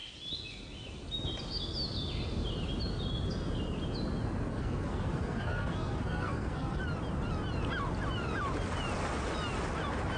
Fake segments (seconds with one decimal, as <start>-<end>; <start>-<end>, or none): 4.5-6.8